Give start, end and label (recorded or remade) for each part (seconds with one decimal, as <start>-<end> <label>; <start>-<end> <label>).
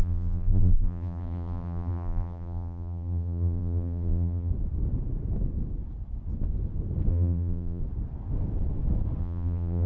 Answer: 0.0-4.5 remade; 4.5-7.1 recorded; 7.1-7.8 remade; 7.8-9.2 recorded; 9.2-9.9 remade